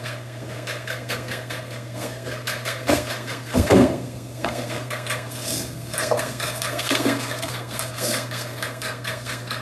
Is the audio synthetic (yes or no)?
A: yes